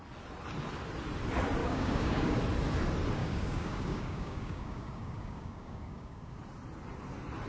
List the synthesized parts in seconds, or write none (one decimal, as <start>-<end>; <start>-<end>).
1.6-2.4; 3.2-6.4